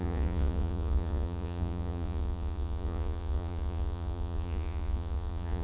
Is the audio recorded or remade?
remade